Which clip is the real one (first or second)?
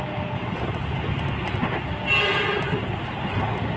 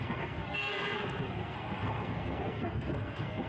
first